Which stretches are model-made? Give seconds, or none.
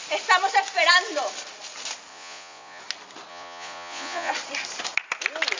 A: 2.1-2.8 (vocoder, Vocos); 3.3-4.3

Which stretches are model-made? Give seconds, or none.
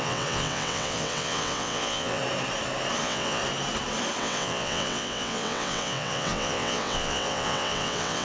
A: 0.0-2.2 (vocoder, WaveNeXt); 3.0-3.4; 4.2-8.2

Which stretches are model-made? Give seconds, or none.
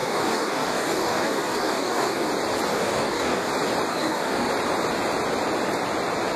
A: 0.0-2.3 (codec, DAC); 2.7-3.5; 3.9-4.5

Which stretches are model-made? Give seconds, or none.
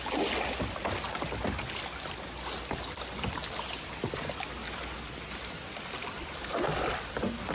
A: none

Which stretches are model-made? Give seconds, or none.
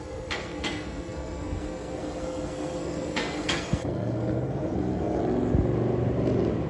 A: 0.0-5.2 (codec, SNAC)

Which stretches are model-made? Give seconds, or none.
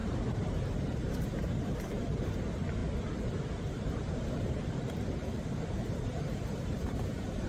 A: 0.0-2.8 (vocoder, BigVGAN v2); 3.7-7.5